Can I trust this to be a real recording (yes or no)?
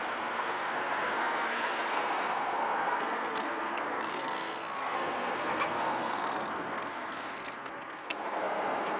no